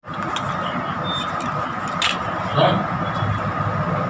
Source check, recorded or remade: recorded